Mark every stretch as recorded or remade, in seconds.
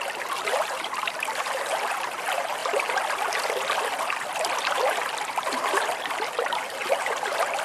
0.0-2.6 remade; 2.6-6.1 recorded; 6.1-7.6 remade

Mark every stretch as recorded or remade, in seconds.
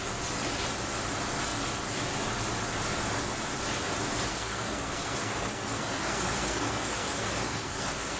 0.0-4.3 recorded; 4.3-8.2 remade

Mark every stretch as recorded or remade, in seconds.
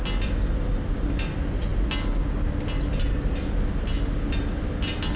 0.0-5.2 recorded